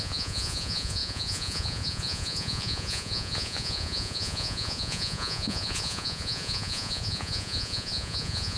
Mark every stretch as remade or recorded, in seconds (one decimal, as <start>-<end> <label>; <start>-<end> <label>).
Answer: 0.0-8.6 remade